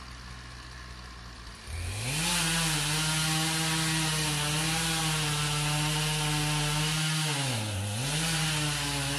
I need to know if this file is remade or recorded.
recorded